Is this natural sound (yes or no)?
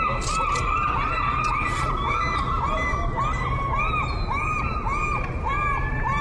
yes